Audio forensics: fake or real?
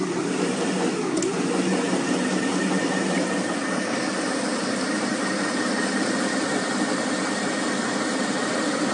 real